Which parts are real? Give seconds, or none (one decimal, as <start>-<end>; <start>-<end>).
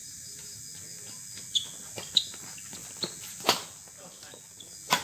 0.6-5.0